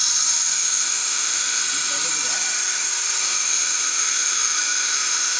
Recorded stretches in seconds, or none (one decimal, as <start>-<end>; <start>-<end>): 0.0-0.5; 1.6-3.2